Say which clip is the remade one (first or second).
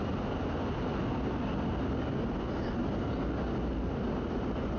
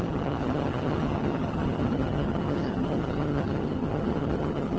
second